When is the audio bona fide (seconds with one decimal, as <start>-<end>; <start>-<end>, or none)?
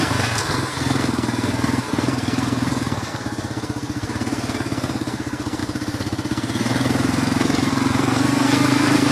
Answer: none